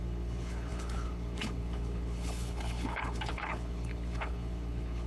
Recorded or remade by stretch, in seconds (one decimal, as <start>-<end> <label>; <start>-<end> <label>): 0.0-5.1 remade